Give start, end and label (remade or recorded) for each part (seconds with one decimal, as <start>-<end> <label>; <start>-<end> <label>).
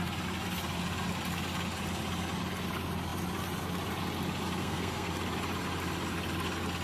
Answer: 0.0-4.6 recorded; 4.6-5.1 remade; 5.1-6.8 recorded